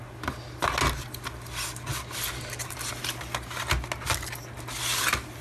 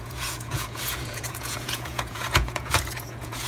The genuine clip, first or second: first